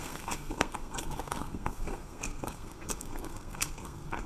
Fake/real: fake